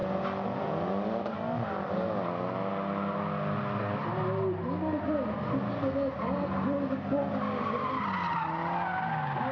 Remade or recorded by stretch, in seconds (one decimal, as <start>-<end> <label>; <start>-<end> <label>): 0.0-9.5 recorded